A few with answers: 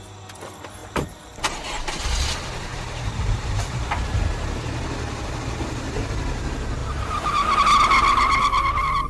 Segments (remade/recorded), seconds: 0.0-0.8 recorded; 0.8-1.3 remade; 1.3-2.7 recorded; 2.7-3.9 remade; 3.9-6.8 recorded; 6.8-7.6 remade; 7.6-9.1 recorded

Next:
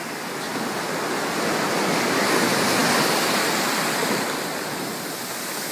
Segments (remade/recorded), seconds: 0.0-5.7 recorded

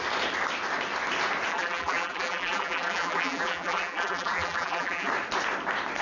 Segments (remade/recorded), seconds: 0.0-1.5 recorded; 1.5-5.1 remade; 5.1-6.0 recorded

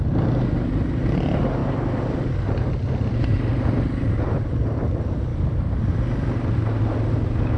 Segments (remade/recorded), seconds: 0.0-1.6 recorded; 1.6-2.7 remade; 2.7-3.5 recorded; 3.5-4.0 remade; 4.0-7.6 recorded

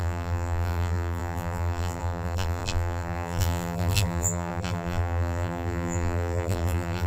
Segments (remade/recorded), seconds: 0.0-7.1 remade

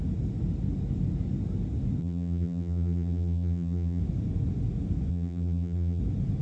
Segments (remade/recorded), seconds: 0.0-2.0 recorded; 2.0-4.0 remade; 4.0-5.1 recorded; 5.1-6.0 remade; 6.0-6.4 recorded

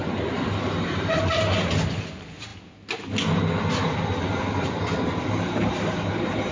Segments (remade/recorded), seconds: 0.0-1.2 remade; 1.2-6.5 recorded